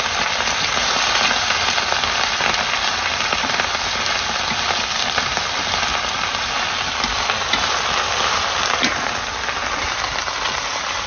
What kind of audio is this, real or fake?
real